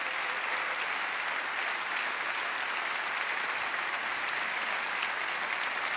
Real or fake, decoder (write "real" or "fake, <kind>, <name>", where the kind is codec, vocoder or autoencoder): real